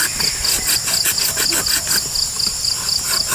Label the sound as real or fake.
real